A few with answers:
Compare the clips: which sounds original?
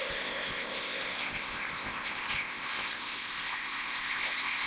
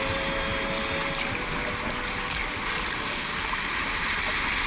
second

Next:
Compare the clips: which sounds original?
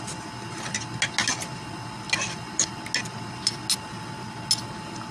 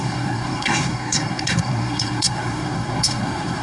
first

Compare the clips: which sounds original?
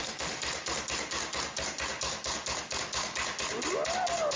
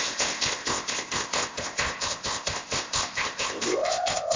first